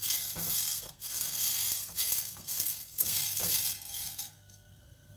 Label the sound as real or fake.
fake